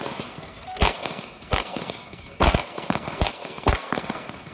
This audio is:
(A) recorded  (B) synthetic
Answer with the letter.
B